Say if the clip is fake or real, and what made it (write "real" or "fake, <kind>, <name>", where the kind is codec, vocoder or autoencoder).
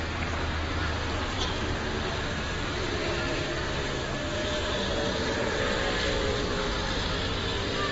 real